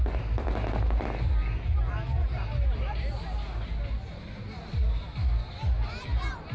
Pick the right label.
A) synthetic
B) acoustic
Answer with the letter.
B